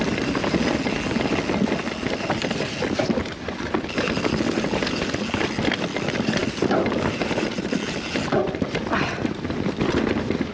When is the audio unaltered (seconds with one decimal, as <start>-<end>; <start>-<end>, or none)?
0.0-10.5